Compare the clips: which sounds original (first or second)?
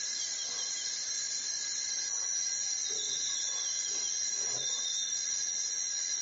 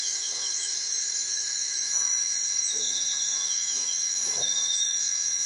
first